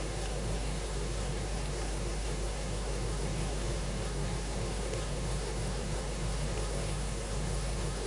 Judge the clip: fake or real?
fake